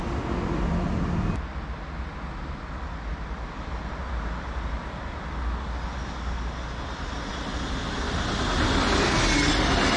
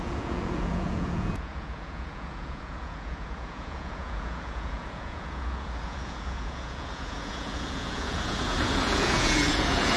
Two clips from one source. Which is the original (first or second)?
first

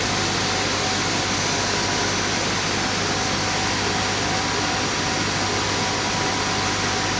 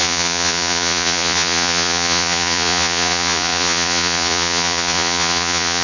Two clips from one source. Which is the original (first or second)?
first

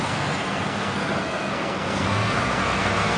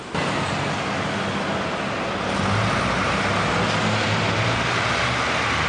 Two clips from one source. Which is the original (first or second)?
second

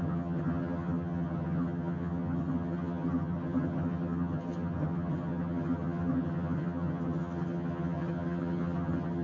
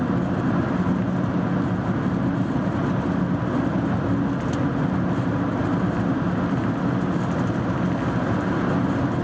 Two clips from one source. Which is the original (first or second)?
second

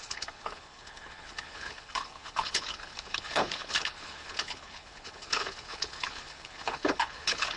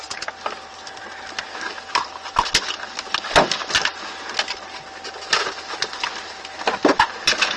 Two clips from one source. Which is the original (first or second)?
second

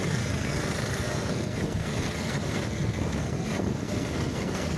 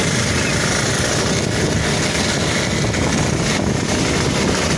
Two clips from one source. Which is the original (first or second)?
second